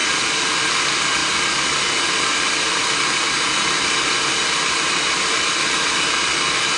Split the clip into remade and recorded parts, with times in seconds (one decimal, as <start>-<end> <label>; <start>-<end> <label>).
0.0-4.4 recorded; 4.4-5.5 remade; 5.5-6.8 recorded